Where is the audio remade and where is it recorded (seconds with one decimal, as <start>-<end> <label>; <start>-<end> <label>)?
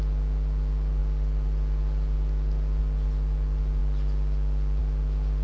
0.0-5.4 recorded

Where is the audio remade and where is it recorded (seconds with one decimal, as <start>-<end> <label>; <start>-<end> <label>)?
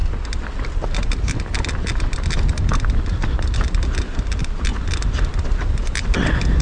0.0-6.6 recorded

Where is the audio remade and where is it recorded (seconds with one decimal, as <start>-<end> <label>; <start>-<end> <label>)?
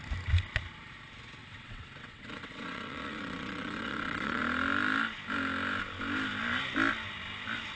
0.0-1.4 recorded; 1.4-4.4 remade; 4.4-7.8 recorded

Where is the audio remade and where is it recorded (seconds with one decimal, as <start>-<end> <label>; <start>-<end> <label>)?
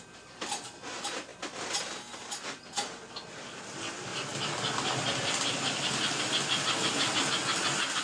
0.0-8.0 recorded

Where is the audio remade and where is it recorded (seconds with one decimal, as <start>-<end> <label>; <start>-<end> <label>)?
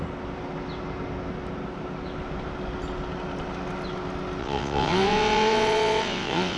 0.0-4.4 recorded; 4.4-6.6 remade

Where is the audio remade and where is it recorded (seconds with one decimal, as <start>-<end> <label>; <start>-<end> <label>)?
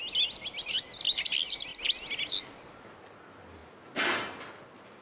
0.0-5.0 recorded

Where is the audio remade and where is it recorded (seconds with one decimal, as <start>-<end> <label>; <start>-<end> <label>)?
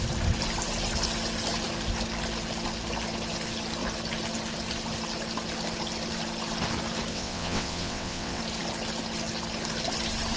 0.0-7.1 recorded; 7.1-8.4 remade; 8.4-10.4 recorded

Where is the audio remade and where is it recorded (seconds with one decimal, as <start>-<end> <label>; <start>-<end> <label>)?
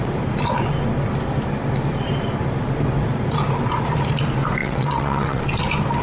0.0-4.6 recorded; 4.6-5.4 remade; 5.4-6.0 recorded